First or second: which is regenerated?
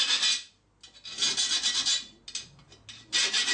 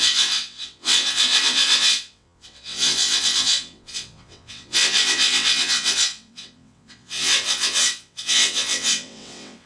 second